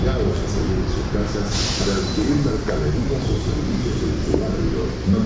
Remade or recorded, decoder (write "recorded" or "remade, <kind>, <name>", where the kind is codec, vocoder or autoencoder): recorded